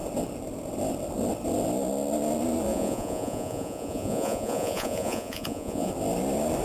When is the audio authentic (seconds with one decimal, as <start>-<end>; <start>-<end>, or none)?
0.0-2.7; 5.9-6.6